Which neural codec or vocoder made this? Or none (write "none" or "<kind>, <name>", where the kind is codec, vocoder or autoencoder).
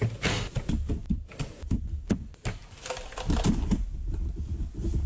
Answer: none